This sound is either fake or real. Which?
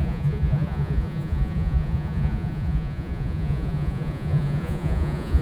fake